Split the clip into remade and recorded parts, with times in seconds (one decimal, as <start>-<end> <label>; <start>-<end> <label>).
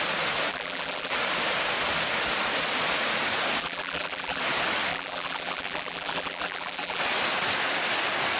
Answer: 0.0-0.5 recorded; 0.5-1.1 remade; 1.1-3.6 recorded; 3.6-4.4 remade; 4.4-4.9 recorded; 4.9-7.0 remade; 7.0-8.4 recorded